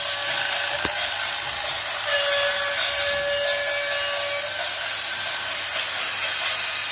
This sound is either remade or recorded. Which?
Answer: recorded